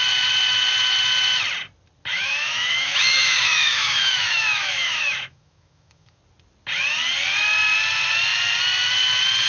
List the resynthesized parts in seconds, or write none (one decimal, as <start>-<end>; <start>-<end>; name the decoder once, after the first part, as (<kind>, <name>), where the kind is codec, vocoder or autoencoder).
2.1-6.2 (autoencoder, DAC-VAE)